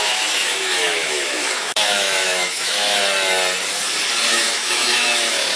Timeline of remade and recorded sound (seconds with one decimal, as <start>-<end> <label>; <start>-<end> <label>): 0.0-3.0 remade; 3.0-4.3 recorded; 4.3-5.6 remade